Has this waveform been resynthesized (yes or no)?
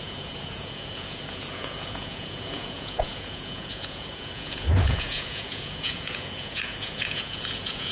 yes